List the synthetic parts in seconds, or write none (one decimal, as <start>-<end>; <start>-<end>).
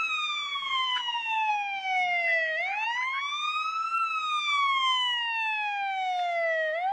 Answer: 0.5-1.5